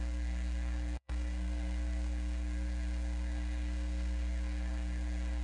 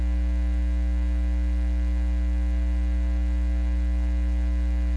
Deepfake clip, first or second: first